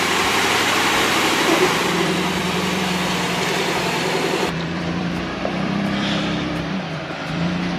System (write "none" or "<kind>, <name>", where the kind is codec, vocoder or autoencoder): vocoder, BigVGAN v2